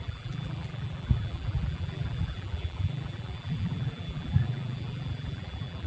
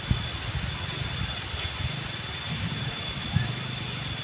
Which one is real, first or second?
second